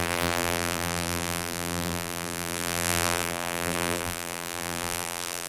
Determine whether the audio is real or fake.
fake